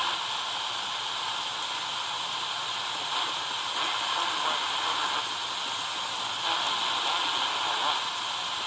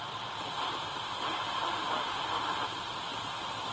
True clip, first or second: first